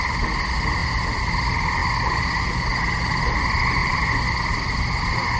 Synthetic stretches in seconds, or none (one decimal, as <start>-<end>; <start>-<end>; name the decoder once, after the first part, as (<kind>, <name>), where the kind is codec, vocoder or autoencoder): 0.8-1.3 (vocoder, BigVGAN v2); 1.8-2.6; 3.8-5.0